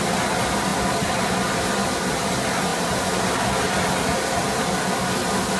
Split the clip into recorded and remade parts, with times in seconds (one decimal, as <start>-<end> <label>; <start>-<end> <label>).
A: 0.0-5.6 recorded